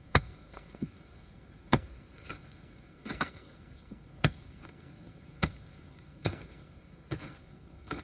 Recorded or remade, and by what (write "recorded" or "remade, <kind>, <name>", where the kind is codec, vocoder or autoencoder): remade, codec, SNAC